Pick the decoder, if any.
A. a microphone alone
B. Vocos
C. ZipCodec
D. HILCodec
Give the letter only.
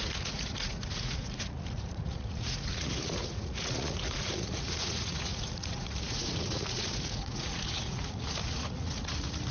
B